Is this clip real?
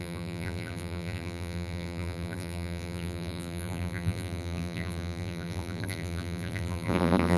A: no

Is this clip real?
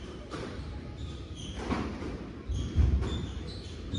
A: no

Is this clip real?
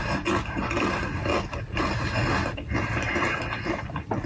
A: yes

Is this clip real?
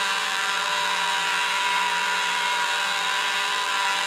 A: no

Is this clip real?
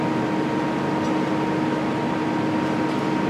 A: yes